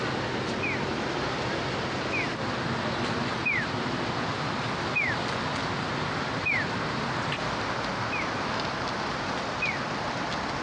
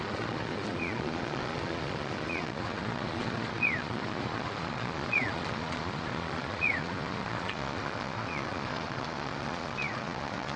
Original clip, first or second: first